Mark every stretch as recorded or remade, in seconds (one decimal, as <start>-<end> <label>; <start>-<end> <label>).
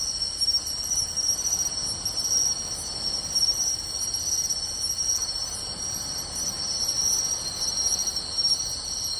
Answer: 0.0-9.2 recorded